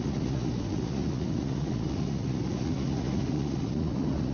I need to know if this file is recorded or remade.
remade